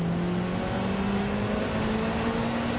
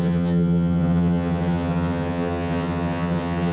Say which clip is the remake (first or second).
second